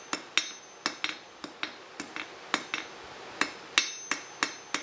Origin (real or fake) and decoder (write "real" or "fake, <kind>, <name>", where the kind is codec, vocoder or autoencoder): real